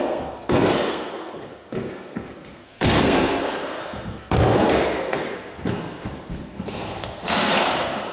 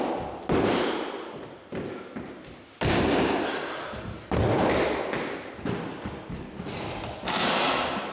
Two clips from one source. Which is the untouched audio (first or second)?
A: second